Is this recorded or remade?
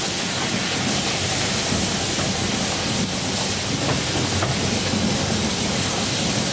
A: recorded